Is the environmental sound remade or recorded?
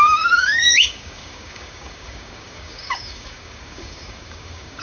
remade